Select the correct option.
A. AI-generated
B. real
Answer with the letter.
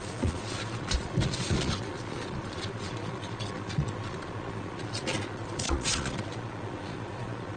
A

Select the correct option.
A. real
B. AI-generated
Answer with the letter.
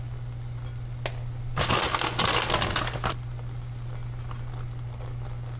A